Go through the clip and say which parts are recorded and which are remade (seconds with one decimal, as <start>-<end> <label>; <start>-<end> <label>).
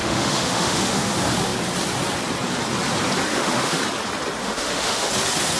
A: 0.0-1.1 remade; 1.1-3.3 recorded; 3.3-3.8 remade; 3.8-4.4 recorded; 4.4-5.1 remade; 5.1-5.6 recorded